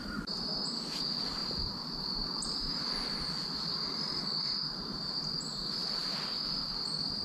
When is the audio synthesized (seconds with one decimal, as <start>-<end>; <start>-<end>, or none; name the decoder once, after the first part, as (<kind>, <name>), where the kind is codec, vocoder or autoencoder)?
none